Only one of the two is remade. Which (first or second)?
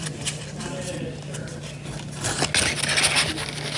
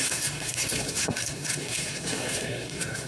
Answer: second